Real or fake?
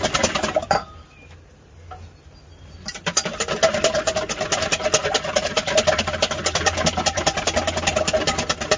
real